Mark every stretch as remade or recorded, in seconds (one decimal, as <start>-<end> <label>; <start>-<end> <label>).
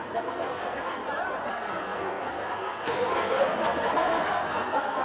0.0-1.0 remade; 1.0-1.5 recorded; 1.5-5.0 remade